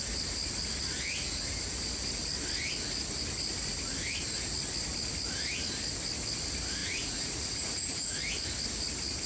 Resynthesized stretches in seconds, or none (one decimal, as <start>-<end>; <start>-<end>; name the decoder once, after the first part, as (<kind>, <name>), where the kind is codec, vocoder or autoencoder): 6.8-8.2 (vocoder, Vocos)